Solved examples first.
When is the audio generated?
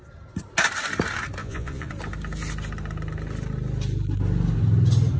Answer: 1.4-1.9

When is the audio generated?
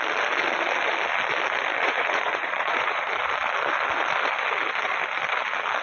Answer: 1.8-3.1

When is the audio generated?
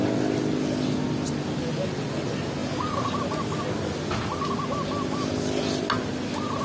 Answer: none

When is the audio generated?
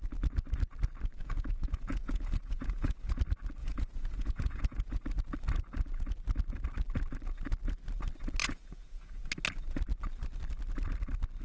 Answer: 1.2-3.2; 3.6-5.0; 8.4-9.3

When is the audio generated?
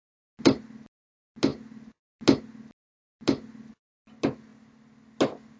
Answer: none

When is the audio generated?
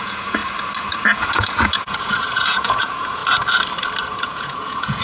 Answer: 0.0-0.4; 0.9-3.2; 4.1-5.0